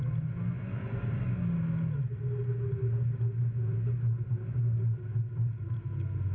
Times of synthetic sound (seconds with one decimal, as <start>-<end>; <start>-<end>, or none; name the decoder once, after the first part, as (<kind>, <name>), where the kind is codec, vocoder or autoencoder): none